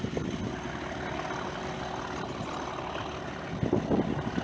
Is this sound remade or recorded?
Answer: recorded